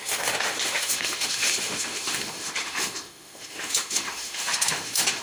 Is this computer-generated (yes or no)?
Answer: yes